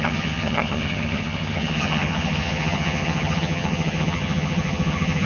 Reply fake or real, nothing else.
fake